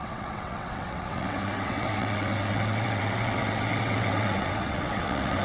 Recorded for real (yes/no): no